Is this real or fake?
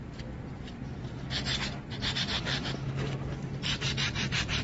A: real